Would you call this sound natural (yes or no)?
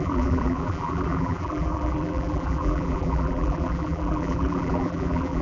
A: no